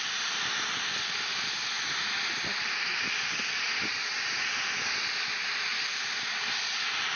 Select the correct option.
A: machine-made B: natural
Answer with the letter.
B